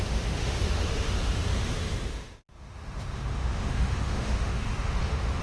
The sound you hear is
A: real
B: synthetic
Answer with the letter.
B